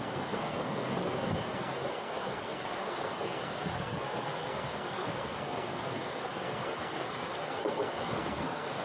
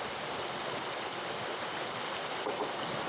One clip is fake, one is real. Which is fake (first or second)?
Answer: first